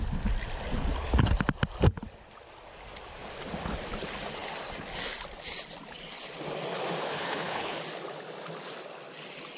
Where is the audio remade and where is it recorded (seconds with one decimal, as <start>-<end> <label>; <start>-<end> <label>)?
0.0-7.1 recorded; 7.1-7.8 remade; 7.8-9.6 recorded